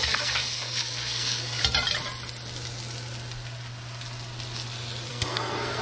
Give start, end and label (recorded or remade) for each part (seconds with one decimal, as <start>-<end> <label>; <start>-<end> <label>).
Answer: 0.0-1.6 remade; 1.6-5.1 recorded; 5.1-5.8 remade